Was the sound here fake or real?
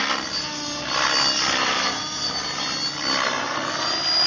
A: real